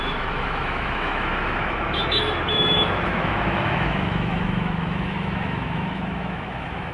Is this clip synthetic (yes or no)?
yes